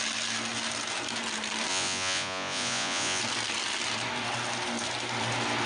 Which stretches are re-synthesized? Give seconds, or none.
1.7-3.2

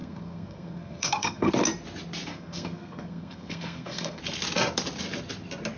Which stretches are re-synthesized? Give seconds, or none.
0.0-1.5; 2.3-4.2

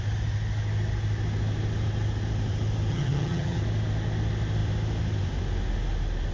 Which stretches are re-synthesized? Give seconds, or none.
2.9-3.6